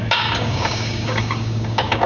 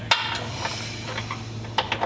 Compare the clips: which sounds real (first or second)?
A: second